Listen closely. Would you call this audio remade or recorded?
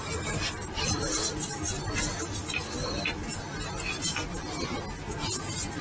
recorded